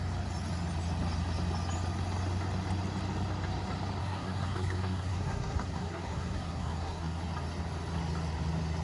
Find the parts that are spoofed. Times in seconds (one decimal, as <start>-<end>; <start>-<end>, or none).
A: 4.0-7.2